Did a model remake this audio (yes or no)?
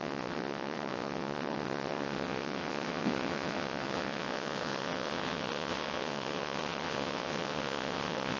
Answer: yes